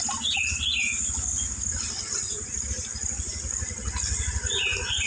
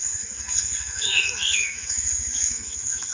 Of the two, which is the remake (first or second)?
second